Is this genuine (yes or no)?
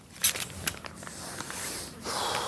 no